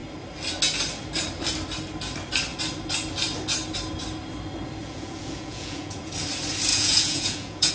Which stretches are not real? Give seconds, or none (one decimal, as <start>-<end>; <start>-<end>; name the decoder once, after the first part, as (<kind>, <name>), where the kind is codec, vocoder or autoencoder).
4.8-6.1 (vocoder, Vocos); 6.7-7.7